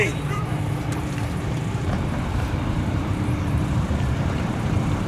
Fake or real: fake